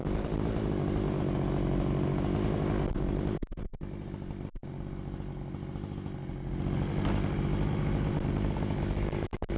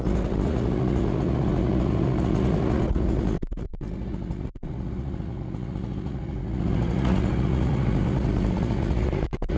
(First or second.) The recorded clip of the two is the first